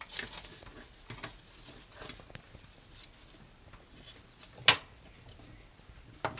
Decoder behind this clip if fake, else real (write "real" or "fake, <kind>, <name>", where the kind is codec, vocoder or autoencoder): real